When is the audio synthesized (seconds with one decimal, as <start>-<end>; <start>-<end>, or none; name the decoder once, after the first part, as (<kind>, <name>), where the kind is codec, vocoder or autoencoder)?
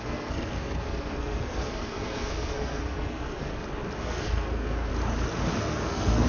0.0-3.5 (codec, SNAC); 4.0-4.9; 5.6-6.3